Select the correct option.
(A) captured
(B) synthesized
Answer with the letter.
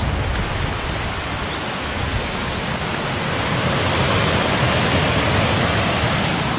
A